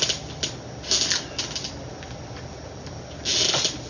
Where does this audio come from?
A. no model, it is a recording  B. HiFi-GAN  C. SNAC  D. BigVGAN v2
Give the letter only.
A